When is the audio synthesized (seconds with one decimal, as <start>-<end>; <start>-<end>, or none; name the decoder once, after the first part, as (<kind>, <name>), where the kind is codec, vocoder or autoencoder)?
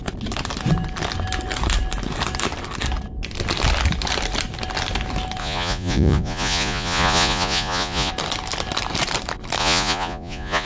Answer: 5.4-8.1 (vocoder, Vocos); 9.6-10.7